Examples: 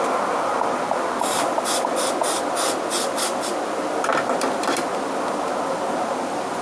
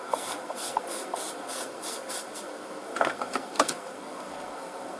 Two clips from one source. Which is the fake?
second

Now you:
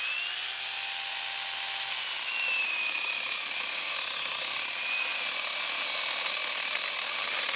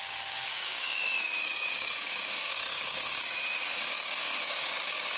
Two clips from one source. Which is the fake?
second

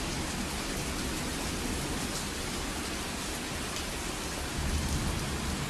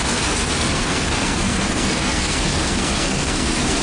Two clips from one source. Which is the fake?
second